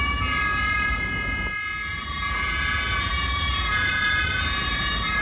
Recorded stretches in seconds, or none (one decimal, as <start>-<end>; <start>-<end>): 0.0-1.9